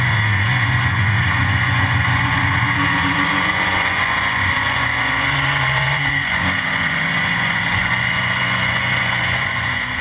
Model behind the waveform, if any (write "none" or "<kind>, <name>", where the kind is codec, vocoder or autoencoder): vocoder, Vocos